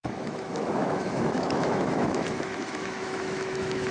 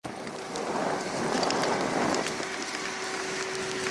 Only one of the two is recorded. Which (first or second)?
second